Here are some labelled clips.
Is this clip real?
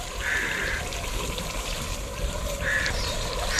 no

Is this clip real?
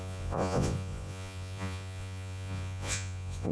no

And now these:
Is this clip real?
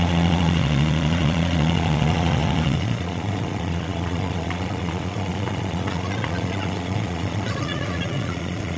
no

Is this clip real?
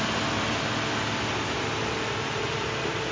yes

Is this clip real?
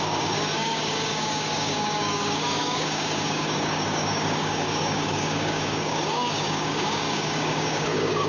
no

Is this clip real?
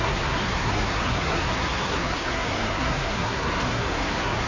no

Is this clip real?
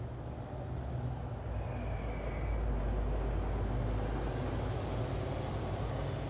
yes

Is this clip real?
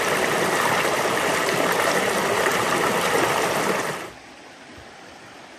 yes